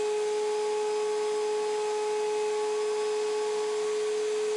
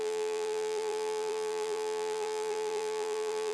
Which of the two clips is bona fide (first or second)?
first